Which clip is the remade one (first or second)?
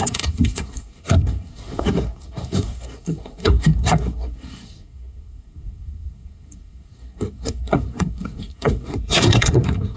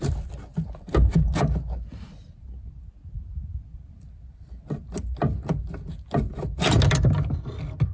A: first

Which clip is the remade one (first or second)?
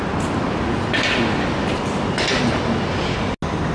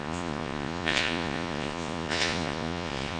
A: second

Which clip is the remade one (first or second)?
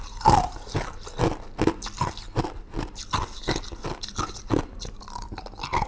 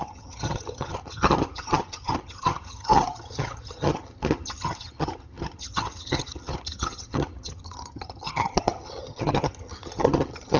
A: second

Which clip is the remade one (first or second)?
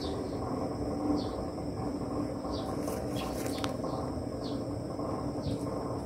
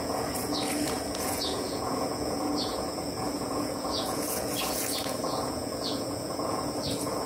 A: second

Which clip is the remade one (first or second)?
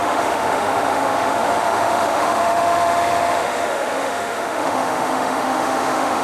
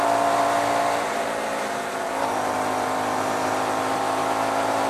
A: first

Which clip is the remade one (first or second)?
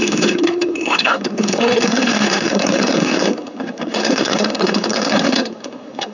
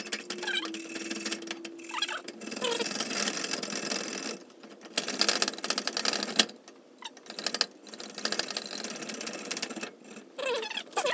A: first